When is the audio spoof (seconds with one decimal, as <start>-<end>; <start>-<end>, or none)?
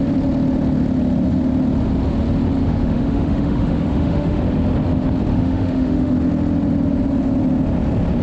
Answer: 2.6-4.4; 5.3-6.1